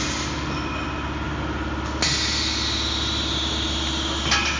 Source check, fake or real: real